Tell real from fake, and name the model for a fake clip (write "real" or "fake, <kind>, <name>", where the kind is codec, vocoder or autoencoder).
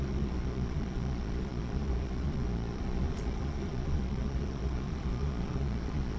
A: fake, vocoder, Vocos